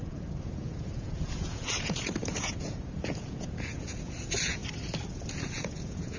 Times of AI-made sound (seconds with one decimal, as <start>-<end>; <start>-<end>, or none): 0.0-4.6; 5.3-6.2